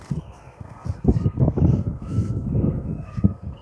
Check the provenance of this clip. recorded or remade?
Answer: remade